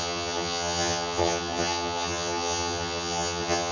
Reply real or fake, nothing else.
fake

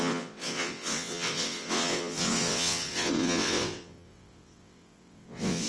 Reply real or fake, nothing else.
fake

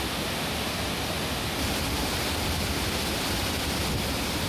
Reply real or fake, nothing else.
real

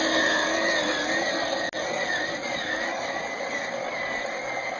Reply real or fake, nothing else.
real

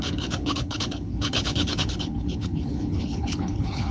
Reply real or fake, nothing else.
fake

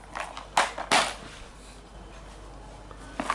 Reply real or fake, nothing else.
real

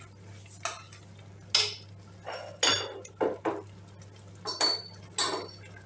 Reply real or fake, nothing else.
real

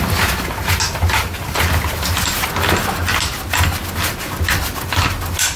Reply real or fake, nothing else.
real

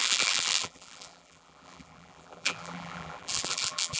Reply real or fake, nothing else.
fake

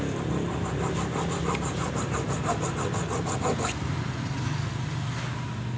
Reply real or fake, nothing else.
real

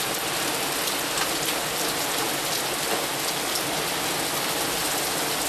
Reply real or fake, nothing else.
real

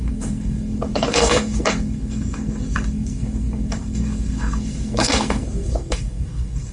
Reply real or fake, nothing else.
fake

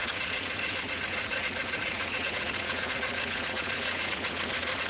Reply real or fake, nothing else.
fake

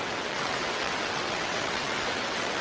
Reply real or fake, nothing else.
fake